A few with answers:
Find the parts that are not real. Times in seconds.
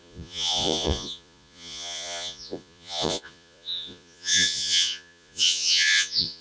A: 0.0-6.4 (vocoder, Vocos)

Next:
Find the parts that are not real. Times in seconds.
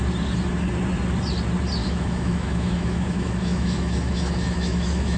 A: 1.8-5.2 (autoencoder, DAC-VAE)